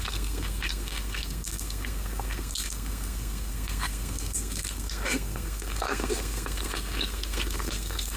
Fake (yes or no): yes